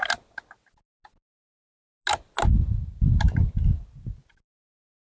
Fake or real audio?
real